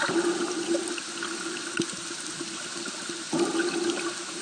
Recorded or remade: recorded